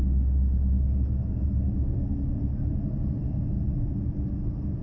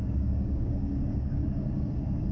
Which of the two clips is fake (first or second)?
second